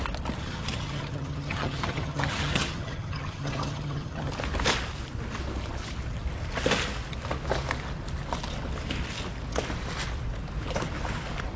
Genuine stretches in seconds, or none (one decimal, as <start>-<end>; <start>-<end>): 0.0-0.4; 4.3-11.6